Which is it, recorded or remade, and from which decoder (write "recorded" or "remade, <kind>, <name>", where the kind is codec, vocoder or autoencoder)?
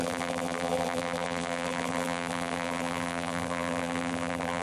remade, vocoder, BigVGAN v2